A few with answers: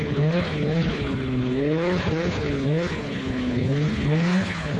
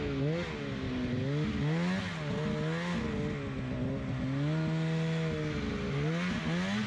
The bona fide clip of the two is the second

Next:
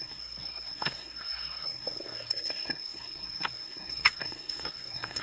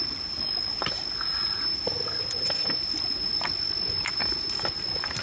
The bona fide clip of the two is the second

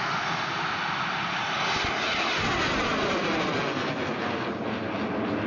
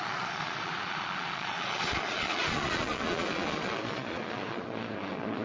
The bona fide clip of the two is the first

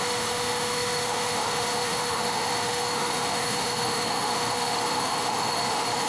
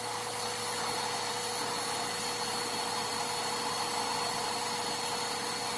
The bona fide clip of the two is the second